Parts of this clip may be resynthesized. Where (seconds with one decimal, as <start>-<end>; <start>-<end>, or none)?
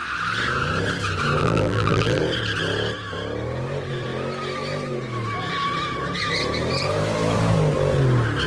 1.4-2.2